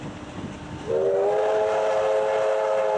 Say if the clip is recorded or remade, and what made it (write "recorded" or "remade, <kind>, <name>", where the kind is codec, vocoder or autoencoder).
recorded